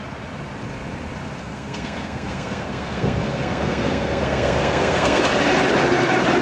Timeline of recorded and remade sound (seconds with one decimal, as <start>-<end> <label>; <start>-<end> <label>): 0.0-1.4 recorded; 1.4-5.2 remade; 5.2-6.4 recorded